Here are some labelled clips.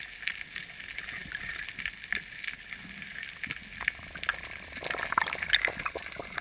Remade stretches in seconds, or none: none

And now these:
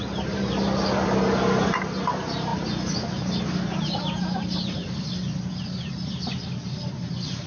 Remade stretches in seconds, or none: 4.8-5.6 (vocoder, BigVGAN v2)

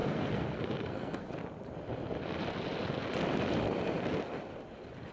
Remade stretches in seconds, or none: 0.0-1.3 (codec, SNAC)